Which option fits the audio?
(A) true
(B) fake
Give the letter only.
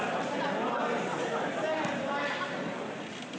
A